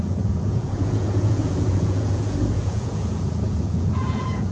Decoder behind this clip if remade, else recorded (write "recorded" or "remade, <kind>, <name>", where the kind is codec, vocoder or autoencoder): remade, vocoder, Vocos